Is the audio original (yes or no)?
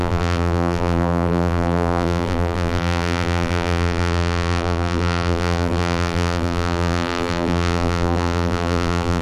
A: no